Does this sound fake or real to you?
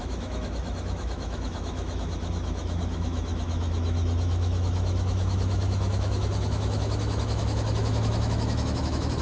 fake